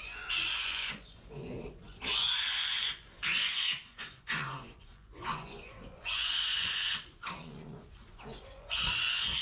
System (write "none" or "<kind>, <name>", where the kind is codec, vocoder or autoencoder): vocoder, Vocos